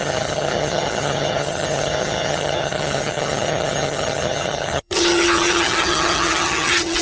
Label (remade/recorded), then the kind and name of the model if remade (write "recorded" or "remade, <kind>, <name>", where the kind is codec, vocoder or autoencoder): remade, vocoder, HiFi-GAN